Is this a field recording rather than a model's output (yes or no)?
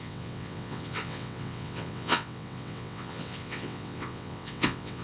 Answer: no